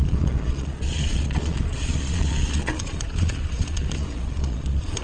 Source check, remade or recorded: remade